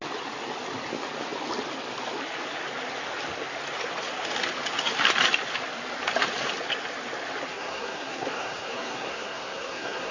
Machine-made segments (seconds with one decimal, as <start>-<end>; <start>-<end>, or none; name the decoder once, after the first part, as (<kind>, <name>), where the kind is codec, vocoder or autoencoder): 7.5-10.1 (codec, SNAC)